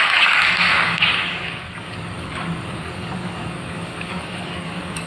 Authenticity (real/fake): fake